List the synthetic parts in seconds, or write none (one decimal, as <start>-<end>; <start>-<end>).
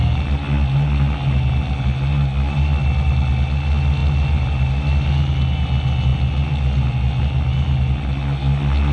none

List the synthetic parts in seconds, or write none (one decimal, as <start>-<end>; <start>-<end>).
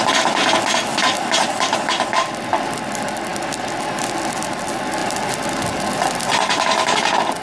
none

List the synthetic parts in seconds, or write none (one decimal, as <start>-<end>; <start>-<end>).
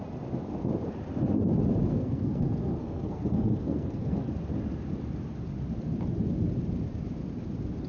1.9-4.3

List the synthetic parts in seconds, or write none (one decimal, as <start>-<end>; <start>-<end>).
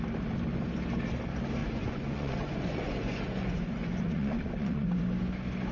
1.6-5.0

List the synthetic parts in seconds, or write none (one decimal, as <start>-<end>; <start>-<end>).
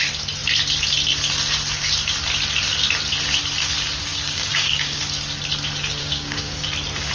4.1-5.0; 6.0-6.6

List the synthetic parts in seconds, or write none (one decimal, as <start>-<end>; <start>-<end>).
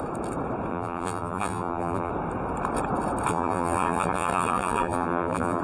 0.7-2.1; 3.3-5.6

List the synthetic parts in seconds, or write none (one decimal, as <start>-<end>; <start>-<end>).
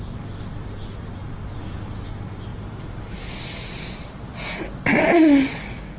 2.5-4.3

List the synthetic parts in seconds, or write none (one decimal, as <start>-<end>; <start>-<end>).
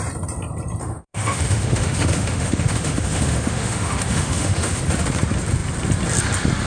0.8-4.8